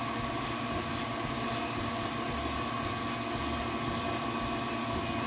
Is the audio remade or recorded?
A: recorded